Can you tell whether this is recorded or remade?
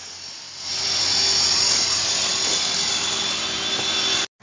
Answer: recorded